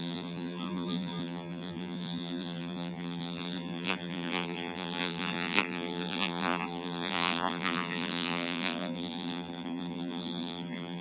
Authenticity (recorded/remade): remade